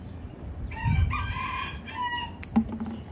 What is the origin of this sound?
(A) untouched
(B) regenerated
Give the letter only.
A